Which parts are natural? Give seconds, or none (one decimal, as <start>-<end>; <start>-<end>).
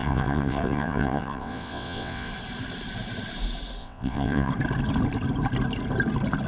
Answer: 2.3-3.8; 4.5-6.5